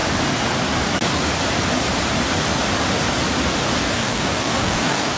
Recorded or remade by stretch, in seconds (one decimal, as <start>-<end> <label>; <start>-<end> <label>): 0.0-3.8 recorded; 3.8-5.2 remade